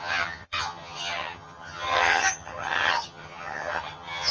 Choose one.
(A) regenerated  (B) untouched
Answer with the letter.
A